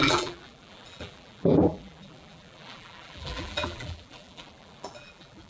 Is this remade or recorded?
remade